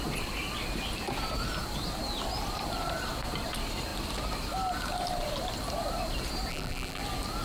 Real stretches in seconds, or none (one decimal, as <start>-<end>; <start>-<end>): 0.0-6.5; 7.0-7.4